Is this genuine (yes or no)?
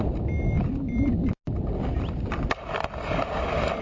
yes